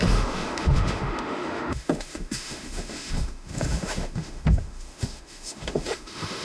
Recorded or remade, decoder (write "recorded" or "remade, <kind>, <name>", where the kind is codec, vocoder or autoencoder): remade, autoencoder, DAC-VAE